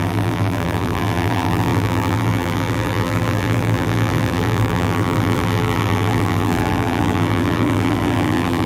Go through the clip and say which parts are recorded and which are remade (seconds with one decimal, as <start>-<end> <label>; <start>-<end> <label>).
0.0-8.7 remade